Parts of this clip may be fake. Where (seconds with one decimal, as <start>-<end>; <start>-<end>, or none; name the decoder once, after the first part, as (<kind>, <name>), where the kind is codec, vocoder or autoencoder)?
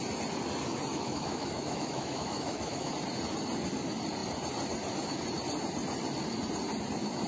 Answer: 0.9-2.9 (autoencoder, DAC-VAE)